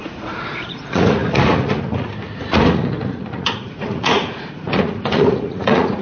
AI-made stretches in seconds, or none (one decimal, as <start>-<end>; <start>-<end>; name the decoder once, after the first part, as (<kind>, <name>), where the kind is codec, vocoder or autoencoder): 0.0-6.0 (vocoder, Vocos)